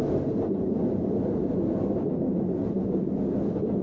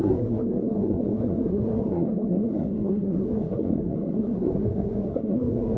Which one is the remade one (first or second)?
second